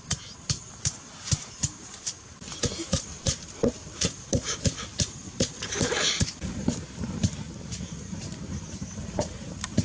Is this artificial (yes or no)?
yes